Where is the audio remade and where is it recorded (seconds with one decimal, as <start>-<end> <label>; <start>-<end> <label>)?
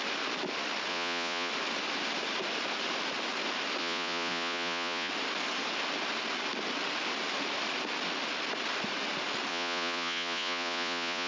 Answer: 0.0-0.9 recorded; 0.9-1.5 remade; 1.5-3.8 recorded; 3.8-5.1 remade; 5.1-9.5 recorded; 9.5-11.3 remade